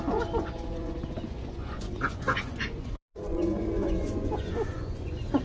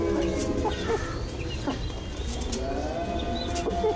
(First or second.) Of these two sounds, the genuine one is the second